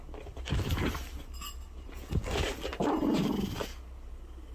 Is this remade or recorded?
recorded